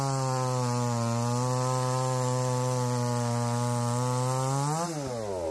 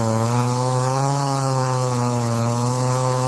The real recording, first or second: first